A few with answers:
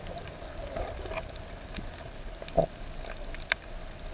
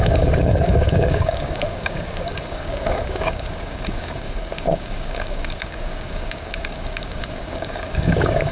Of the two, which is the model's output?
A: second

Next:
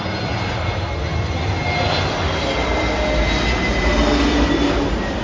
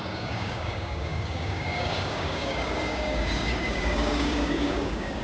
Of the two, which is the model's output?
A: second